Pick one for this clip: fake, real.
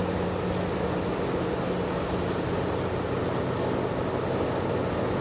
real